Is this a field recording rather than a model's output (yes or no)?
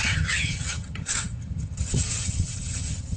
no